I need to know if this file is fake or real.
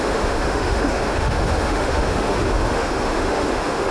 fake